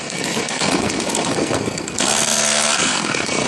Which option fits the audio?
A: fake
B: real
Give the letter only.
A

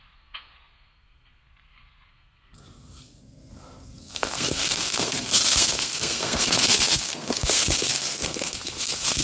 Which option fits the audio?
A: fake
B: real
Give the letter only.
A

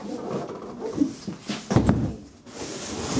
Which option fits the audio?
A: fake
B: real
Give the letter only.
B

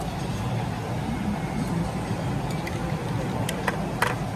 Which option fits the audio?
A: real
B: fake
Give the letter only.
A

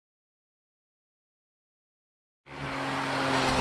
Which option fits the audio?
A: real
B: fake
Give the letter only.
A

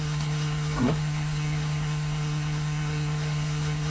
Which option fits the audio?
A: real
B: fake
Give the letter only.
B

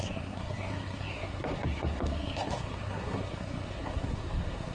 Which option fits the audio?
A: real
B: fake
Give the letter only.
B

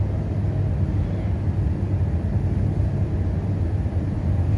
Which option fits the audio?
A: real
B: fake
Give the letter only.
A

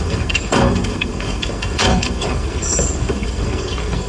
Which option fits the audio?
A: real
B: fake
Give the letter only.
B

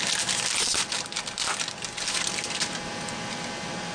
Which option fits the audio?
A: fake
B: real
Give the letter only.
B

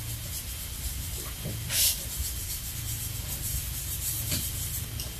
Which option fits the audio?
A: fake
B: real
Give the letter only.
B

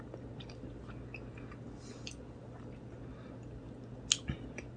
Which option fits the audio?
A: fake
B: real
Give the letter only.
B